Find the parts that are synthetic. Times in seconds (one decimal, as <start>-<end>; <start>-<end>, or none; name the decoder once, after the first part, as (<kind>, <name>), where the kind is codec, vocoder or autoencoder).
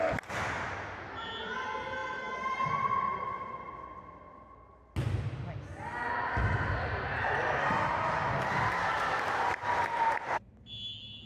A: none